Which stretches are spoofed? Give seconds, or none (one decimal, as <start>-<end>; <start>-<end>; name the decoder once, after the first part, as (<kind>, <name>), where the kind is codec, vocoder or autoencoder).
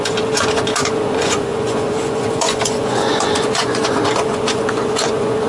0.0-5.5 (vocoder, Vocos)